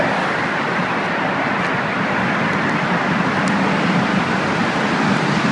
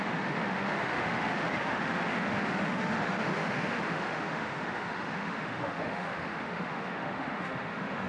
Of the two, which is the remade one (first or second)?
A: second